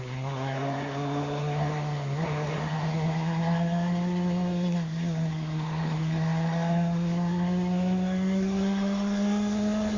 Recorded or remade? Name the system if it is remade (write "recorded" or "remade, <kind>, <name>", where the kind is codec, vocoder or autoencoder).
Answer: remade, codec, SNAC